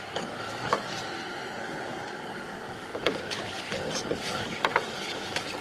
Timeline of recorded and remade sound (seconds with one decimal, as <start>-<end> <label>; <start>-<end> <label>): 0.0-0.9 remade; 0.9-1.6 recorded; 1.6-5.6 remade